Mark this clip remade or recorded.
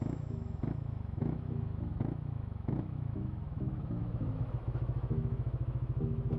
remade